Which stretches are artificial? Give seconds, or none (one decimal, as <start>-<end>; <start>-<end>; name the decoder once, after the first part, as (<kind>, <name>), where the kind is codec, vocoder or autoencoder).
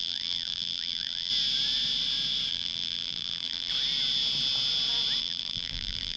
0.0-1.3 (vocoder, BigVGAN v2); 2.5-3.7; 5.2-6.2